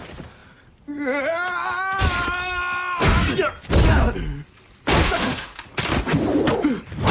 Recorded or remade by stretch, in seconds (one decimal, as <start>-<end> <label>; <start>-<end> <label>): 0.0-5.0 recorded; 5.0-5.6 remade; 5.6-7.1 recorded